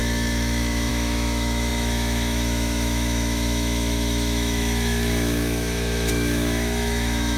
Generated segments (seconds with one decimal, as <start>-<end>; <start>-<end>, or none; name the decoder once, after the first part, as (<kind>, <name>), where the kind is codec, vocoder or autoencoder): 0.0-7.4 (autoencoder, DAC-VAE)